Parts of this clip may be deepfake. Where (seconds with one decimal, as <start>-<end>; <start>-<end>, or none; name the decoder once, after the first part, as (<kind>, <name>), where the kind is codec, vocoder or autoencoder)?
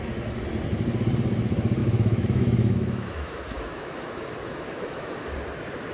1.8-5.3 (autoencoder, DAC-VAE)